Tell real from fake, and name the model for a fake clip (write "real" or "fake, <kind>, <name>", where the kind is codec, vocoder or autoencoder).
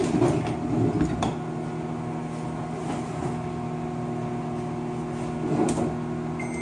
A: real